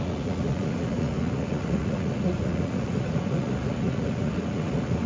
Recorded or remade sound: remade